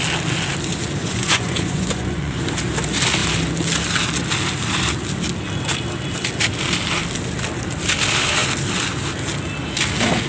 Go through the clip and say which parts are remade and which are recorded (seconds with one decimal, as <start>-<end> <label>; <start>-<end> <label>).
0.0-1.0 recorded; 1.0-2.4 remade; 2.4-10.3 recorded